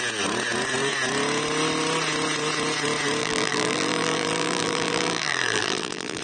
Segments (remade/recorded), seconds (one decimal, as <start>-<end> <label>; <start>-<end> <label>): 0.0-3.2 recorded; 3.2-6.2 remade